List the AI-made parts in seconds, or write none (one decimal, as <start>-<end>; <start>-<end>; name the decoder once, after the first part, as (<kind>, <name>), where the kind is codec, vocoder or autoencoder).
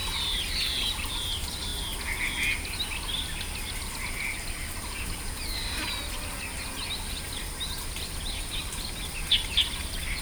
none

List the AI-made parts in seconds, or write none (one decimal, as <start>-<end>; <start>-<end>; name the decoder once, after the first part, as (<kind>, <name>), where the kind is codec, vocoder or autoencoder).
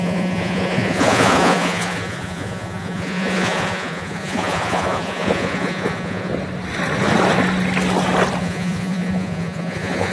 0.0-6.3 (vocoder, Vocos); 8.4-10.1